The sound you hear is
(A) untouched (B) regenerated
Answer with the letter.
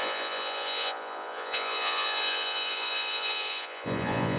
B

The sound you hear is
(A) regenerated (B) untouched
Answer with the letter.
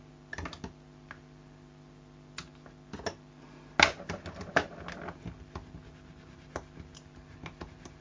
B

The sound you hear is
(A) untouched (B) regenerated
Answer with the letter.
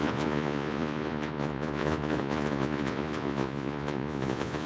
B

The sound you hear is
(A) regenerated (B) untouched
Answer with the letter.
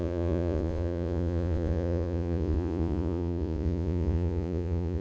A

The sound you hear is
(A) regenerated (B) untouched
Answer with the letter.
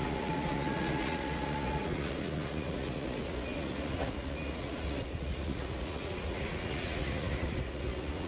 A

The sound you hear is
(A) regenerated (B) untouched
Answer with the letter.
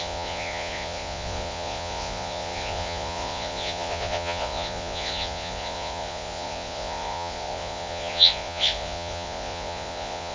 A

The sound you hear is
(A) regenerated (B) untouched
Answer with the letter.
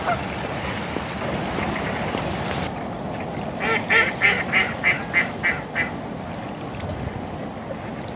B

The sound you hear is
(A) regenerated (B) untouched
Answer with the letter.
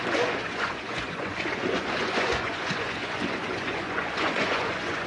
A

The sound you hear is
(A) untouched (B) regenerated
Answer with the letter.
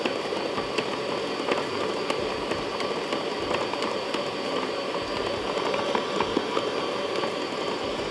A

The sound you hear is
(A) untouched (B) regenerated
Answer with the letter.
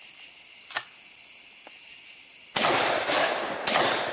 A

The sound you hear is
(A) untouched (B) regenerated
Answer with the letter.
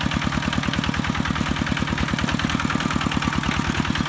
A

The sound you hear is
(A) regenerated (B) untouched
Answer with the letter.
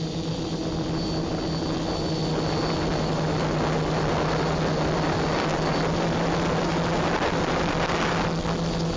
B